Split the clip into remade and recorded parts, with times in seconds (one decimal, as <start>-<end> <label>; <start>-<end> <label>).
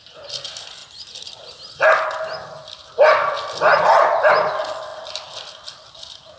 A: 0.0-6.4 recorded